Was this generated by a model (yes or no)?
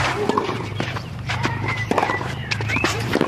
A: yes